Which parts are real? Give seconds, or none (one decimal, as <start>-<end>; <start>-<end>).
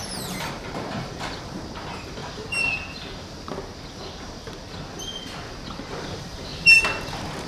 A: 2.2-5.9; 6.5-7.1